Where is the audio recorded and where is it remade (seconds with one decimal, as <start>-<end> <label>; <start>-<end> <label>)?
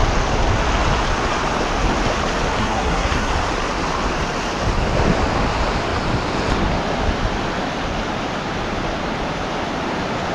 0.0-2.6 recorded; 2.6-3.3 remade; 3.3-10.3 recorded